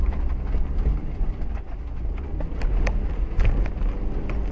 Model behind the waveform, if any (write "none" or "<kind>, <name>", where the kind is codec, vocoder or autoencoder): none